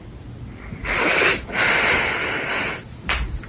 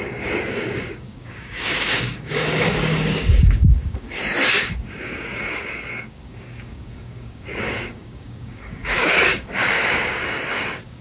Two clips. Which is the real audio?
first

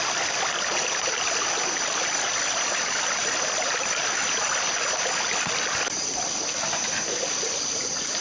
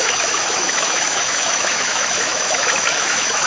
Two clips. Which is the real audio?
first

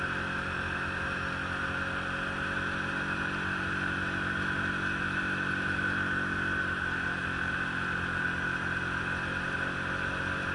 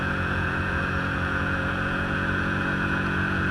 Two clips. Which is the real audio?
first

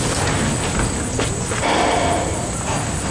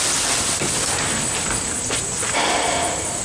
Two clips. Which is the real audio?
first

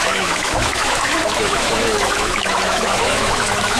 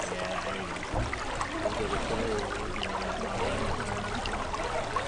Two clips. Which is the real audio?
second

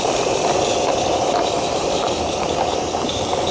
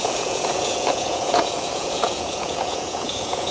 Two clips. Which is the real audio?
first